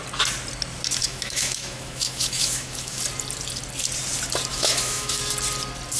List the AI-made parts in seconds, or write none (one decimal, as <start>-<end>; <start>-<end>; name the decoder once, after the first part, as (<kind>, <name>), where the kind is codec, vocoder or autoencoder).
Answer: 1.0-3.0 (autoencoder, DAC-VAE); 4.5-5.2